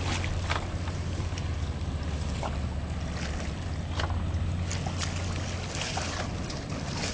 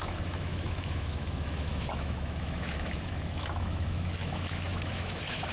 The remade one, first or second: second